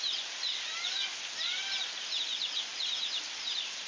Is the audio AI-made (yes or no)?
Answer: no